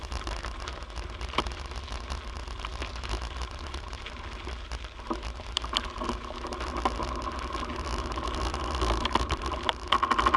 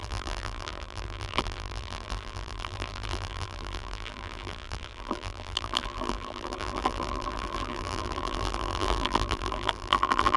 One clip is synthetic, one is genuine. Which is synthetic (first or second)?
second